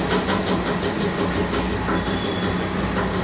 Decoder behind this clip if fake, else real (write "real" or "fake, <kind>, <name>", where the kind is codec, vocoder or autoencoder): real